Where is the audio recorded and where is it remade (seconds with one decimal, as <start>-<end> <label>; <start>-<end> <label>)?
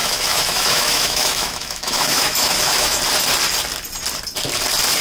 0.0-3.0 remade; 3.0-5.0 recorded